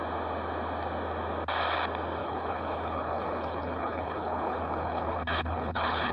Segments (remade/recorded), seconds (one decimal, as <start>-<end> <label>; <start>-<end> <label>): 0.0-2.2 recorded; 2.2-6.1 remade